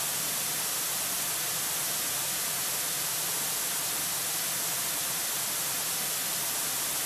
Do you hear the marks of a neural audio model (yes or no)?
no